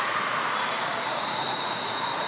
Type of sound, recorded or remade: remade